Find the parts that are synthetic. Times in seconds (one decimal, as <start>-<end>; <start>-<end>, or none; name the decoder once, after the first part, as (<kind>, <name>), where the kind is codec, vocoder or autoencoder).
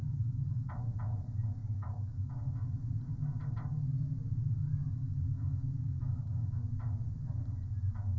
0.0-0.7 (codec, DAC); 1.6-2.3; 4.8-6.7